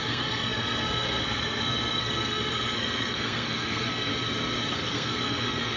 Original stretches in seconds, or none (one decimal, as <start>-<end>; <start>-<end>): 4.1-4.7